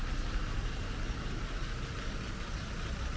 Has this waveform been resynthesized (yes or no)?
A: no